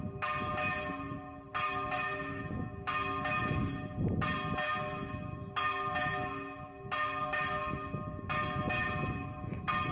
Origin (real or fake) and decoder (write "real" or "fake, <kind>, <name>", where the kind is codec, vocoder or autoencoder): real